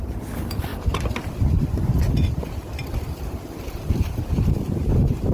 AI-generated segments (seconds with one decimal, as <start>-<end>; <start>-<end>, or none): 0.7-3.9